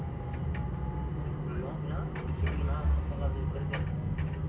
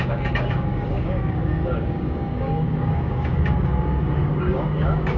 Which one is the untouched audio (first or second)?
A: first